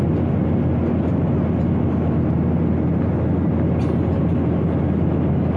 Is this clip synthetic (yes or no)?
no